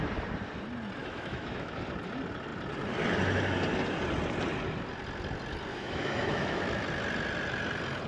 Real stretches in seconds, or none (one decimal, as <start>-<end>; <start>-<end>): 0.0-1.0; 1.7-5.7; 6.6-8.1